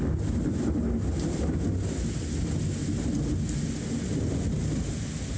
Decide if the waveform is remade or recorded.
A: recorded